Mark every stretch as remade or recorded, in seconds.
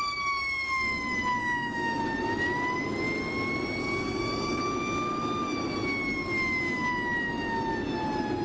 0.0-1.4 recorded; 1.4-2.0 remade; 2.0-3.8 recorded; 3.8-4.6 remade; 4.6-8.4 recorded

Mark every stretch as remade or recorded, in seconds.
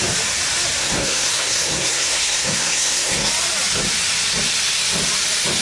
0.0-0.8 recorded; 0.8-3.3 remade; 3.3-5.6 recorded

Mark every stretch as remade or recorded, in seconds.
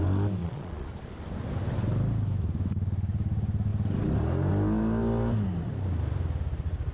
0.0-0.4 recorded; 0.4-0.9 remade; 0.9-6.9 recorded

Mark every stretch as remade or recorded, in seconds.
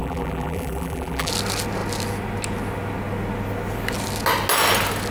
0.0-1.3 remade; 1.3-5.1 recorded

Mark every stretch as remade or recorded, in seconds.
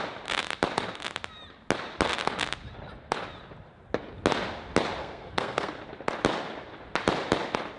0.0-5.0 recorded; 5.0-5.7 remade; 5.7-7.8 recorded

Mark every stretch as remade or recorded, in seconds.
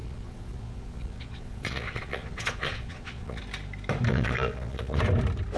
0.0-3.4 remade; 3.4-4.1 recorded; 4.1-5.0 remade; 5.0-5.6 recorded